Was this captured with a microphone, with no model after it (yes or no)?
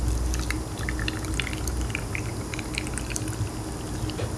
yes